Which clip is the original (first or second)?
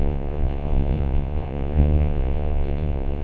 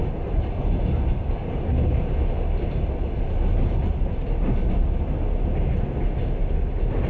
second